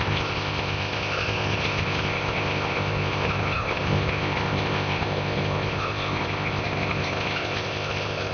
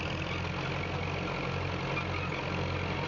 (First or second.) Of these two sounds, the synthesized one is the first